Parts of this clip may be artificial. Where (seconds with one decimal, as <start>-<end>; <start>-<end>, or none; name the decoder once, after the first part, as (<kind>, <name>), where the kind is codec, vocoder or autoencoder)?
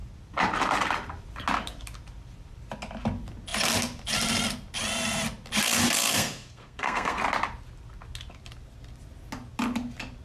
6.1-7.2 (codec, SNAC)